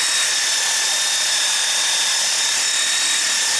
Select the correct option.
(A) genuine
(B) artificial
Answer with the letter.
A